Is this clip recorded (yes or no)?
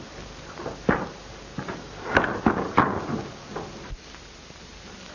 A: yes